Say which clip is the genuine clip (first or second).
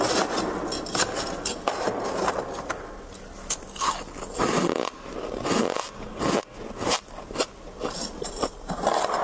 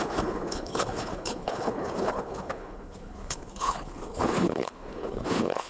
first